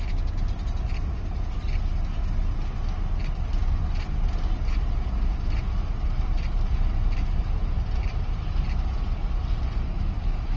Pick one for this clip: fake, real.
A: real